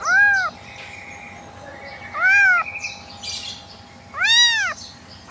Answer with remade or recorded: recorded